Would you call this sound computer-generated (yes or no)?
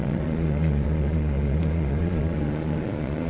yes